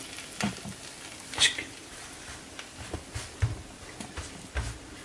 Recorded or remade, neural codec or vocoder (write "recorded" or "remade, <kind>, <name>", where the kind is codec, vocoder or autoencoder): recorded